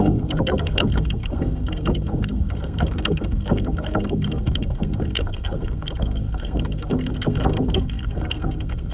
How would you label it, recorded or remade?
remade